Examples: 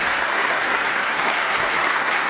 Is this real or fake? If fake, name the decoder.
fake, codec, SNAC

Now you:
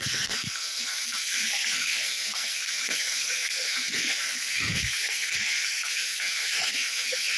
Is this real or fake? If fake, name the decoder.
fake, codec, SNAC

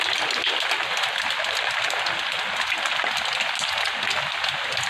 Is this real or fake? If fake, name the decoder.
real